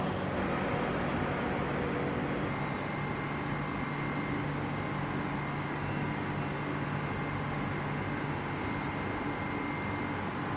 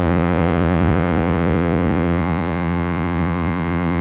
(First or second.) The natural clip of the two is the first